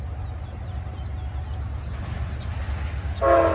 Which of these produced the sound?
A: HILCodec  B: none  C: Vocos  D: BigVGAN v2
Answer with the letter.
B